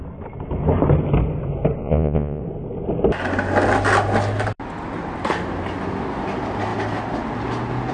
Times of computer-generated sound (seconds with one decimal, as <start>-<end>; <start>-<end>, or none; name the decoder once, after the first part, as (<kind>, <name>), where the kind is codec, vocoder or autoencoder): 1.8-2.4 (vocoder, Vocos)